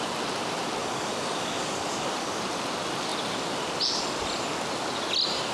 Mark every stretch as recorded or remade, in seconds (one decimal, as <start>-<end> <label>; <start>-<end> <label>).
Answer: 0.0-0.8 recorded; 0.8-2.4 remade; 2.4-5.5 recorded